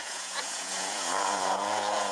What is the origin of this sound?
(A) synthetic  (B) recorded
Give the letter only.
A